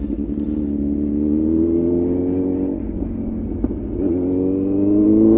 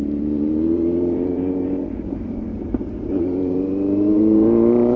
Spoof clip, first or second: second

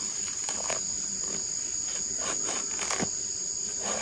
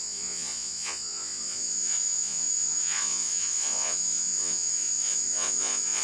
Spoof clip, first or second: second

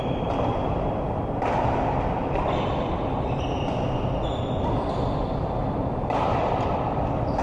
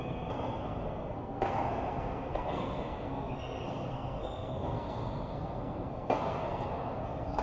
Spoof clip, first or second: second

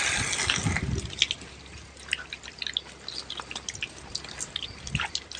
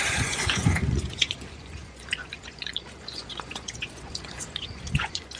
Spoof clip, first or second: second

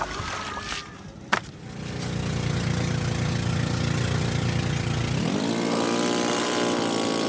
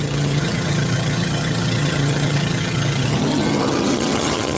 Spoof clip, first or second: second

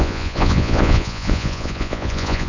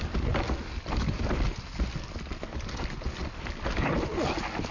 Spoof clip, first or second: first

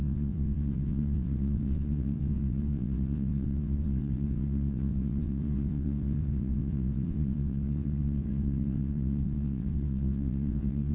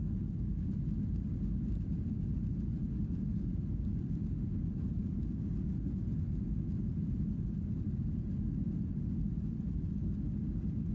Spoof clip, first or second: first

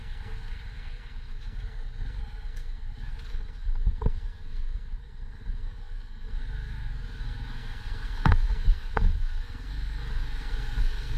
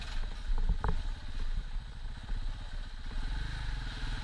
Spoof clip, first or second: first